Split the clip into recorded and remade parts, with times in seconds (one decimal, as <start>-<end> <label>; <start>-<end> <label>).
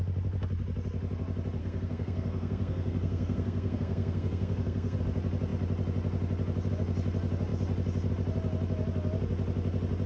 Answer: 0.0-1.6 recorded; 1.6-5.0 remade; 5.0-10.1 recorded